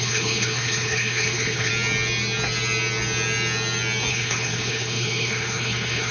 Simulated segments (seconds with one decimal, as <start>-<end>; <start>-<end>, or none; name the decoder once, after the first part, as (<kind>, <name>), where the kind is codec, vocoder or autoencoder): 0.0-1.7 (codec, HILCodec); 4.1-6.1